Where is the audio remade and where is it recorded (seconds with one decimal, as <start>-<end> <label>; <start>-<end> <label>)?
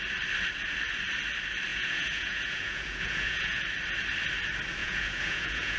0.0-1.7 recorded; 1.7-3.6 remade; 3.6-4.8 recorded; 4.8-5.8 remade